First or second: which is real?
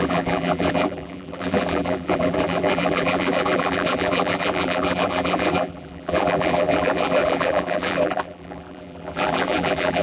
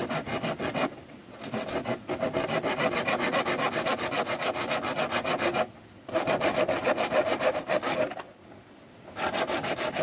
second